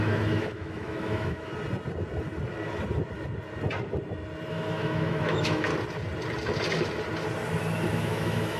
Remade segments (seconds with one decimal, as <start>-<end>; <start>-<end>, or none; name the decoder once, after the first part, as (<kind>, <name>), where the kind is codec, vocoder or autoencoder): 0.0-1.5 (autoencoder, DAC-VAE); 4.5-5.7; 7.9-8.6